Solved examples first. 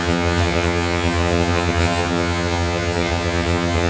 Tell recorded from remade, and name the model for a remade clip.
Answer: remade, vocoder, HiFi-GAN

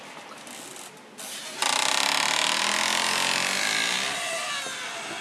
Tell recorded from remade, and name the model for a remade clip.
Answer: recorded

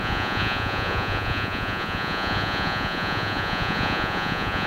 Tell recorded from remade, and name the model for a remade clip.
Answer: remade, vocoder, Vocos